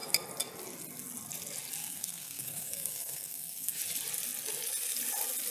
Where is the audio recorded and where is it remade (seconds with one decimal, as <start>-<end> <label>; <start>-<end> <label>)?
0.0-1.8 recorded; 1.8-3.8 remade; 3.8-5.5 recorded